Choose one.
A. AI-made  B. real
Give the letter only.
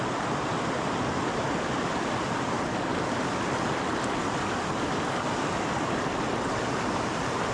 B